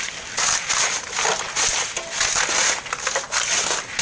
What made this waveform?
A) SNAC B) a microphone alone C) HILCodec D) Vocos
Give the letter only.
B